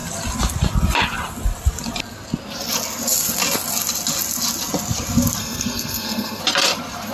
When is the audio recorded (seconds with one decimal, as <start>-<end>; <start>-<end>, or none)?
0.0-5.4; 6.4-7.1